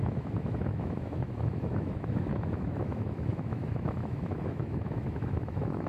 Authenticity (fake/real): fake